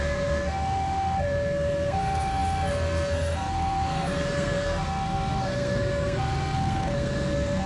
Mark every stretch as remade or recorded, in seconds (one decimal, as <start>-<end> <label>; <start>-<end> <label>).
0.0-7.7 remade